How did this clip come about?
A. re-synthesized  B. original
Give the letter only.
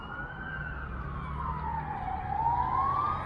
B